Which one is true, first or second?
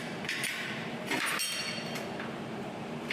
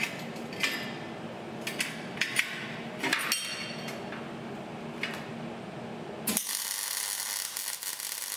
second